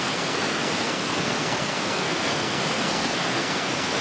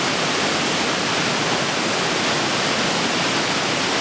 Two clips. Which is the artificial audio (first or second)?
first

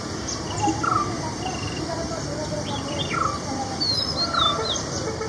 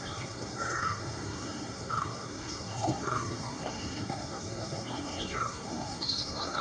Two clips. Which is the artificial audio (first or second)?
second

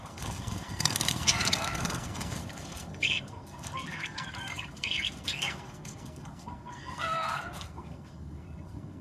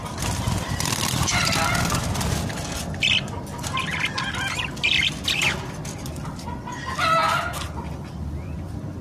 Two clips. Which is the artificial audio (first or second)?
first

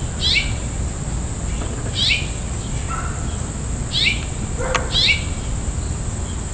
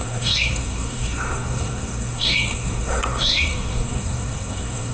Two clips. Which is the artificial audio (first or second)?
second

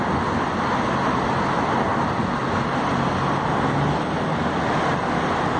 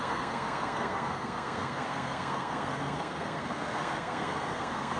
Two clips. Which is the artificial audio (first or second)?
second